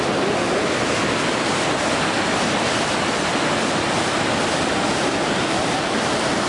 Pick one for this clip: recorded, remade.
recorded